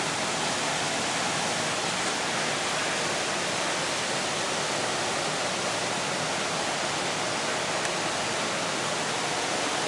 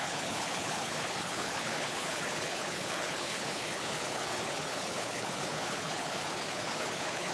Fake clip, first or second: second